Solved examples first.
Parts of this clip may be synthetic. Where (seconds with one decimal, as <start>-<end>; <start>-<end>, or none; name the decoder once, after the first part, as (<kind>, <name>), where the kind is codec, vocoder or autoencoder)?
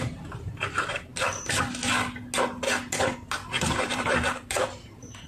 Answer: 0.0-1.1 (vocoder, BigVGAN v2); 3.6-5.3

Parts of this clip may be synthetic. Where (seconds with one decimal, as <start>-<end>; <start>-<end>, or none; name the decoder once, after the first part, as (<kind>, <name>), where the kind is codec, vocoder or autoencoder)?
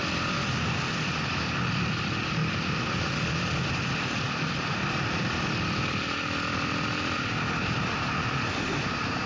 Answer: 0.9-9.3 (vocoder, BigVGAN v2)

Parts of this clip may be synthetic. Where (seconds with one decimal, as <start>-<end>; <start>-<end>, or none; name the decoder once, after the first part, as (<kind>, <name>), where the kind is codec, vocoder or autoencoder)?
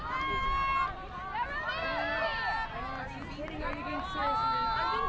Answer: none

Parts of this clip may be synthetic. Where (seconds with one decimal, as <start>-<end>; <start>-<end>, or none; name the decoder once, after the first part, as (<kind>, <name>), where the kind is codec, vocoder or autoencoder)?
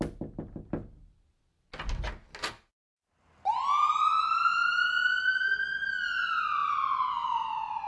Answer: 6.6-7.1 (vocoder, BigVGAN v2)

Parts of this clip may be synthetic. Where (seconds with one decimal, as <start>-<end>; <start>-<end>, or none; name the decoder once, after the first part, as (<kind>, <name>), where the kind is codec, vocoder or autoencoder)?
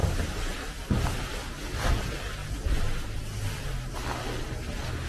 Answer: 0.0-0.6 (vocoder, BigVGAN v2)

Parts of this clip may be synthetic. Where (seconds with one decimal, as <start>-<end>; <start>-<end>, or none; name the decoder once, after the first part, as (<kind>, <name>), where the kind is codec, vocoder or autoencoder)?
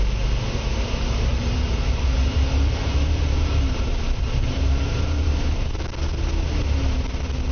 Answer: 1.3-5.8 (vocoder, BigVGAN v2)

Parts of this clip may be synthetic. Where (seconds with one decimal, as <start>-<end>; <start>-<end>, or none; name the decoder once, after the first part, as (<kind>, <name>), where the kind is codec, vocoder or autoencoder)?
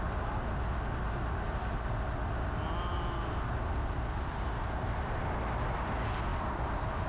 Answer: 3.8-5.2 (vocoder, BigVGAN v2); 6.3-7.1